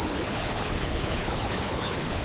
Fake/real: fake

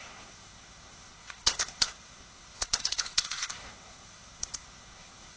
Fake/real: fake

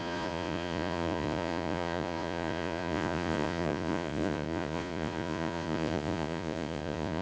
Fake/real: fake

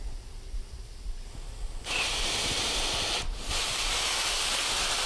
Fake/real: real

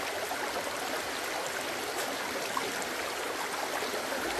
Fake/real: real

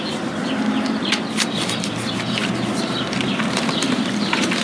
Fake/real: fake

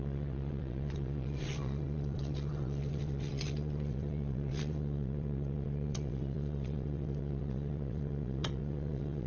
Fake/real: fake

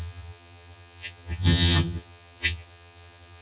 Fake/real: fake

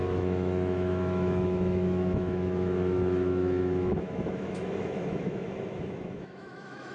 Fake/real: fake